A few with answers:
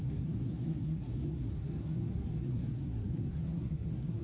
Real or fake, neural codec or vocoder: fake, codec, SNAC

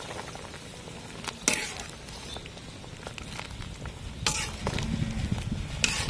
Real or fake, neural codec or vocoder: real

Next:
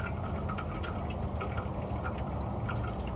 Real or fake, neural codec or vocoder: real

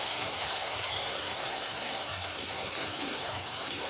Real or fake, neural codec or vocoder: fake, codec, SNAC